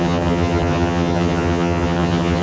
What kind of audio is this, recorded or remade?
remade